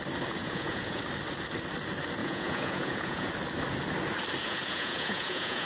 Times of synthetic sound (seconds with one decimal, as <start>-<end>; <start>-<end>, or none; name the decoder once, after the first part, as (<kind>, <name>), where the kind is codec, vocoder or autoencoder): 0.4-1.0 (vocoder, Vocos); 2.2-3.3; 4.4-5.7